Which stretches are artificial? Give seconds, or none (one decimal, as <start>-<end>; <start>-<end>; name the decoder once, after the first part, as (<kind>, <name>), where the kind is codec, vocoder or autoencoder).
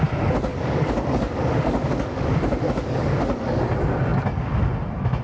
0.5-3.6 (codec, DAC)